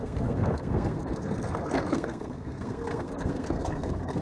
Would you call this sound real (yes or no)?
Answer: no